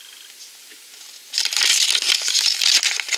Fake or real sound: real